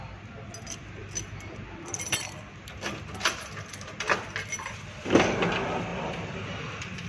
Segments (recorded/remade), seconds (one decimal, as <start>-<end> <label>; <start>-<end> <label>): 0.0-7.1 recorded